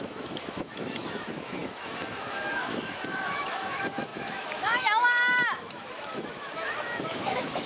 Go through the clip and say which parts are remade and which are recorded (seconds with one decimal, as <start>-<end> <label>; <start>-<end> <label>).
0.0-7.7 remade